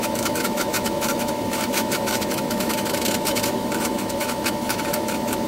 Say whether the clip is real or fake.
fake